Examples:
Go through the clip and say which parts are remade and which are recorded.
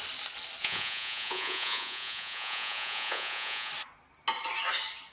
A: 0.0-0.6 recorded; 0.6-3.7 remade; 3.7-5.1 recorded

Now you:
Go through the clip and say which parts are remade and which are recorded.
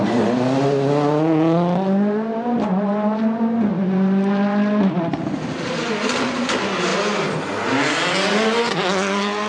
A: 0.0-9.5 recorded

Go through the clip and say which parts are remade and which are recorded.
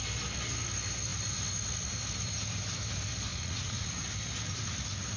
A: 0.0-3.3 recorded; 3.3-3.9 remade; 3.9-5.2 recorded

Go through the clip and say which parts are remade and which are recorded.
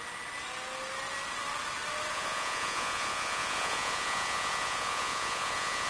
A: 0.0-2.1 recorded; 2.1-5.9 remade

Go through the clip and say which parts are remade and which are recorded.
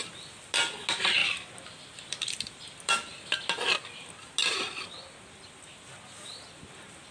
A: 0.0-7.1 recorded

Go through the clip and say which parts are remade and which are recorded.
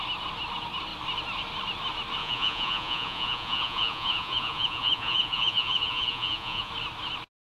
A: 0.0-2.2 recorded; 2.2-6.7 remade; 6.7-7.5 recorded